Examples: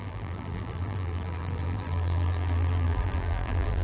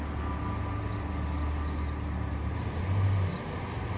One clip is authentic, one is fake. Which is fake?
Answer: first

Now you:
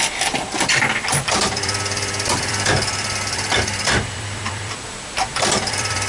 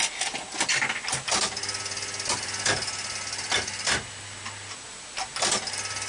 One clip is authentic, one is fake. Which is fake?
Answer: first